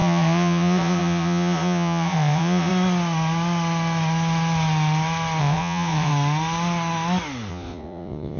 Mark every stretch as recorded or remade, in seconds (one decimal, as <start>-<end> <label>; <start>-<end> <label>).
0.0-2.7 remade; 2.7-5.4 recorded; 5.4-6.1 remade; 6.1-7.5 recorded; 7.5-8.4 remade